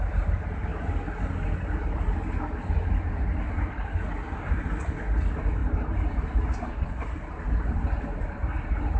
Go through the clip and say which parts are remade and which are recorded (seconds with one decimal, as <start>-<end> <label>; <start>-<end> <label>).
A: 0.0-9.0 recorded